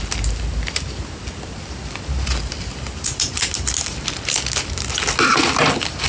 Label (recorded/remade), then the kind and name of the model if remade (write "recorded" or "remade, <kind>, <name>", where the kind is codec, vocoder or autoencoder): recorded